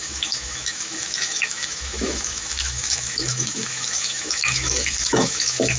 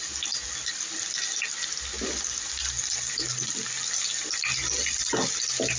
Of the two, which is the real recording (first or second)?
second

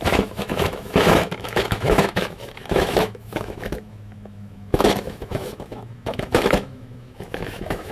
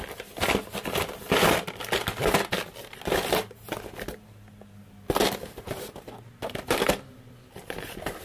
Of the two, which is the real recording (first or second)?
second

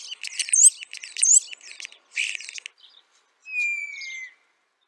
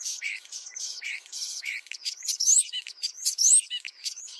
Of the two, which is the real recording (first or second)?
first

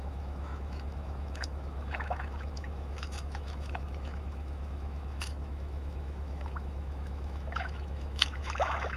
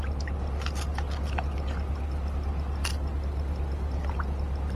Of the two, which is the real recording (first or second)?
second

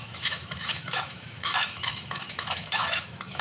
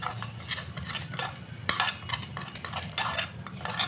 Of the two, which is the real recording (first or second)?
second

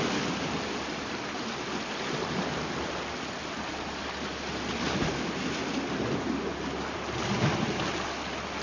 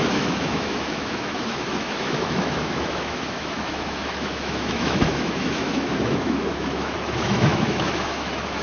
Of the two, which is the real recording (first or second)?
first